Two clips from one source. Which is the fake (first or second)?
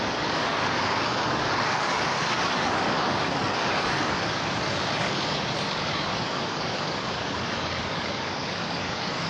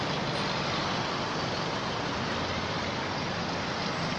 first